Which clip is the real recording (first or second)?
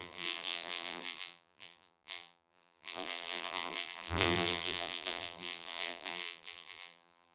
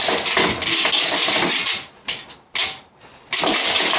second